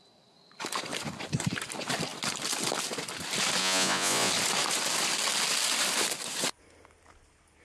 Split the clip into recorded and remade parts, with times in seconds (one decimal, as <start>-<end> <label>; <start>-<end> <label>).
0.0-3.6 recorded; 3.6-4.3 remade; 4.3-7.6 recorded